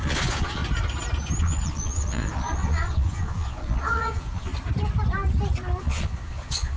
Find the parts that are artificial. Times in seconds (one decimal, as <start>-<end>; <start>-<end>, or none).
0.0-0.6; 1.4-4.5; 5.8-6.8